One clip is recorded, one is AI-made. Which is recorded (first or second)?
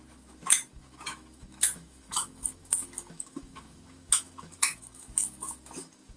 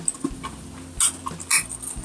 second